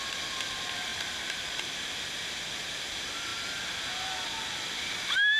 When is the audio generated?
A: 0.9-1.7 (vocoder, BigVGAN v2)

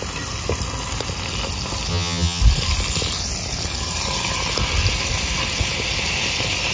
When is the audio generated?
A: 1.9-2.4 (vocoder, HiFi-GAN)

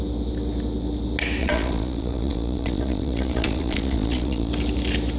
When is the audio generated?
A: 1.4-4.5 (vocoder, Vocos)

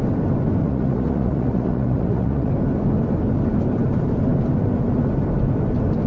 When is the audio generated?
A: 0.6-2.5 (vocoder, Vocos)

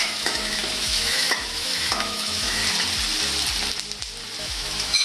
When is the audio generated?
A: 0.0-2.6 (autoencoder, DAC-VAE); 4.4-5.0

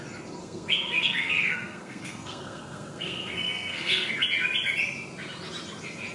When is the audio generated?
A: 0.4-4.1 (codec, SNAC)

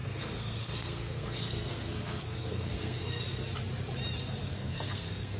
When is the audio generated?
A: 0.0-3.2 (codec, SNAC); 4.4-5.4